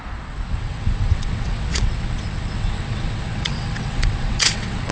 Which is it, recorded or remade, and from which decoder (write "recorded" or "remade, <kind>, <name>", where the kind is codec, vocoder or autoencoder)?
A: remade, vocoder, WaveNeXt